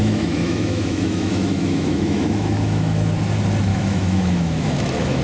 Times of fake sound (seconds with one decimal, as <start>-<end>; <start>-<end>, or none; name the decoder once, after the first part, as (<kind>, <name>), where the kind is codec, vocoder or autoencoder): 0.0-3.1 (autoencoder, DAC-VAE); 3.7-5.2